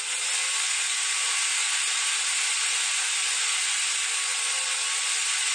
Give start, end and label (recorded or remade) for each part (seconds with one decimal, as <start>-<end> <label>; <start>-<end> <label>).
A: 0.0-5.5 recorded